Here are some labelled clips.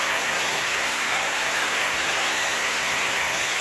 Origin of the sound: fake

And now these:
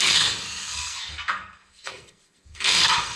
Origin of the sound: fake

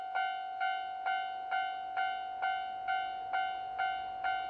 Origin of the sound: real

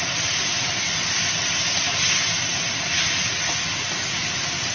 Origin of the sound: real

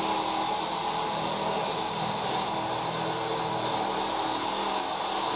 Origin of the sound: real